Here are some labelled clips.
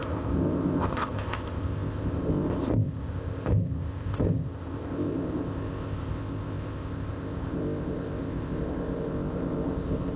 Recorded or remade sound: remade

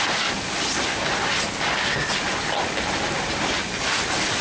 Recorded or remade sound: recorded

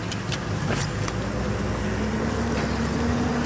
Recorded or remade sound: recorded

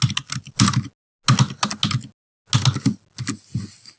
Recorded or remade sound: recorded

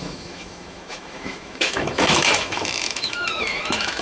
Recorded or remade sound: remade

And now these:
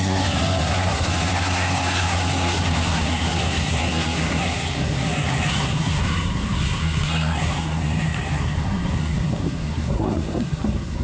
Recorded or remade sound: remade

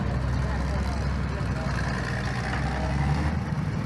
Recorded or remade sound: recorded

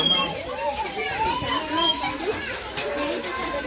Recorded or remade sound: remade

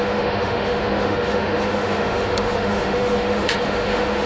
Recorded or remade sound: remade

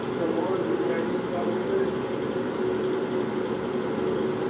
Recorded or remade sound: recorded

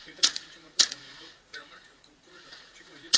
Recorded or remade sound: remade